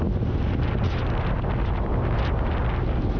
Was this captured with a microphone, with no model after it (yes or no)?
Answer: yes